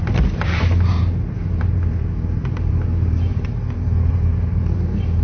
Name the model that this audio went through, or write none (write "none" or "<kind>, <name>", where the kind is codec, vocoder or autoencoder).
vocoder, BigVGAN v2